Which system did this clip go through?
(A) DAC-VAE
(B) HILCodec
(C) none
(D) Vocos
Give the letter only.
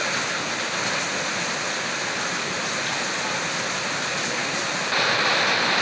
C